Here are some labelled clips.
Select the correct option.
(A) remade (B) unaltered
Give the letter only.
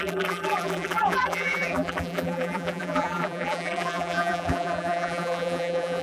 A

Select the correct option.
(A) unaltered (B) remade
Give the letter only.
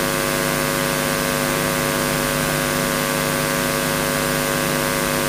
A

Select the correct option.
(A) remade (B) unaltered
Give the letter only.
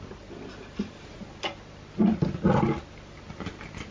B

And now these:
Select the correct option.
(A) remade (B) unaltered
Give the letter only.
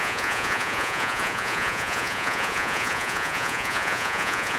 A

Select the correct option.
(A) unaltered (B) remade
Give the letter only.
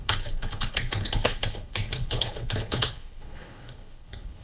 B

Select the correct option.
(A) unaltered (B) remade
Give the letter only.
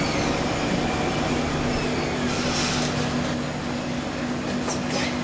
A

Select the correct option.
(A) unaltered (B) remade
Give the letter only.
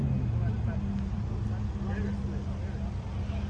A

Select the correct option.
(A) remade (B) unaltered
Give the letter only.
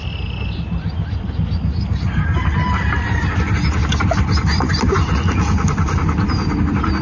B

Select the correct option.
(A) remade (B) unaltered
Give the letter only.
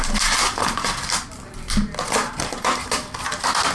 B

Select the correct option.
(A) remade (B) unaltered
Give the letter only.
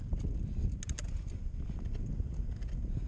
B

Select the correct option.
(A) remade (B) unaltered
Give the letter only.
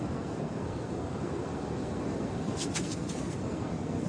A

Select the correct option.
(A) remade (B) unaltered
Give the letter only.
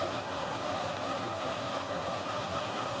A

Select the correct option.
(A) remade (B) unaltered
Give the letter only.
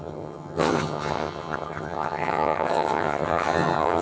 A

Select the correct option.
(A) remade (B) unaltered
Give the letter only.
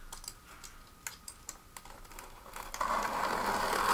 B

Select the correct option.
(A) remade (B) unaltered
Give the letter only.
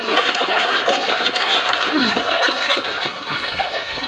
A